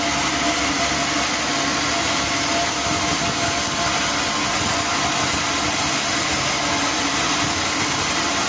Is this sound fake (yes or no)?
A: no